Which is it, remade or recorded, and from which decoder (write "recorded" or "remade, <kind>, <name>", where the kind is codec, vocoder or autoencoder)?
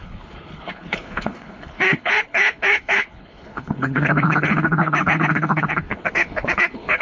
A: remade, codec, HILCodec